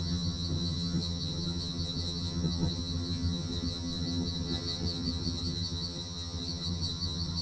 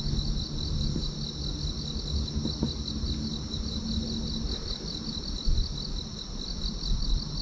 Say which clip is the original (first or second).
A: second